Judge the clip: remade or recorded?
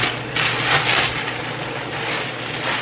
recorded